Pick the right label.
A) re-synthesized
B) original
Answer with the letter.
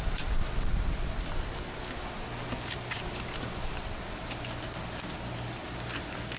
B